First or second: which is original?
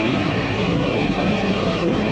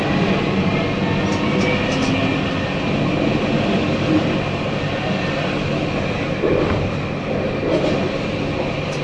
second